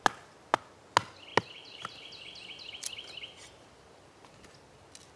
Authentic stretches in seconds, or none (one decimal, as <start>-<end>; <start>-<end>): 0.0-5.2